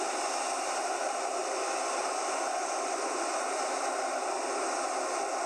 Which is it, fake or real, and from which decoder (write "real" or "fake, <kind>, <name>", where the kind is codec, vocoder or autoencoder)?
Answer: real